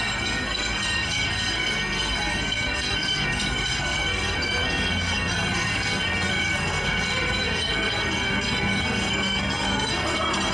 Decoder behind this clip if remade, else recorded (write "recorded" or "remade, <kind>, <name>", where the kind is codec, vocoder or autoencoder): remade, codec, SNAC